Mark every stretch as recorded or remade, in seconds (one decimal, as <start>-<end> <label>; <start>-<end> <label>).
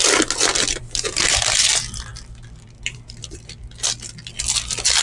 0.0-0.5 recorded; 0.5-1.7 remade; 1.7-2.1 recorded; 2.1-4.3 remade; 4.3-5.0 recorded